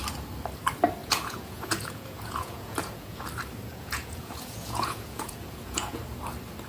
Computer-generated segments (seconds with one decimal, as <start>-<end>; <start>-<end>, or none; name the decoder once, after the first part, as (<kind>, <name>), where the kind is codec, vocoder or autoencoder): 1.0-3.2 (vocoder, Vocos); 3.7-6.0